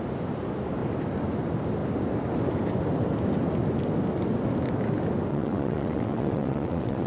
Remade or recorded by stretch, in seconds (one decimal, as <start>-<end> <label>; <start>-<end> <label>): 0.0-5.3 recorded; 5.3-7.1 remade

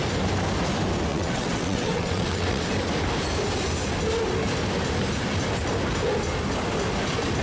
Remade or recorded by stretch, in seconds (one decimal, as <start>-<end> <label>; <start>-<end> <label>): 0.0-1.1 recorded; 1.1-2.7 remade; 2.7-7.4 recorded

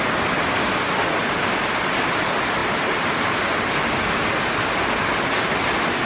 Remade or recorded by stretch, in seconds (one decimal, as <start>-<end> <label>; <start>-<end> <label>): 0.0-6.1 recorded

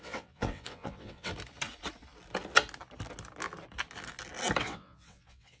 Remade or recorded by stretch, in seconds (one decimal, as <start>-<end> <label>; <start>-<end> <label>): 0.0-1.3 remade; 1.3-4.6 recorded; 4.6-5.6 remade

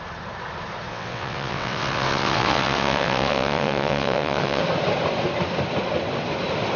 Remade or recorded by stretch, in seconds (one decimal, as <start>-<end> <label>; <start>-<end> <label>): 0.0-0.9 recorded; 0.9-4.6 remade; 4.6-6.8 recorded

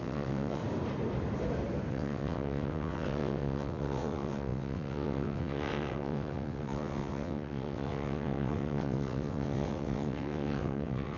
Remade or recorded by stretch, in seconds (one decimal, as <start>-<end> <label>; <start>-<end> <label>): 0.0-0.6 remade; 0.6-1.9 recorded; 1.9-11.2 remade

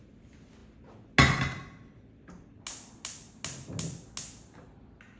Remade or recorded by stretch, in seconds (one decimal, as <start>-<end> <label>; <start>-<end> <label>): 0.0-5.2 recorded